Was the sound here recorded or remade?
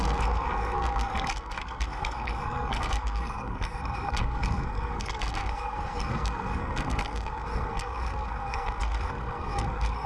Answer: remade